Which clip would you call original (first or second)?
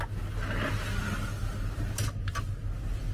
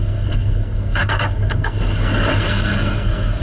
first